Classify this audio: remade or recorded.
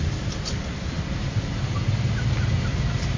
recorded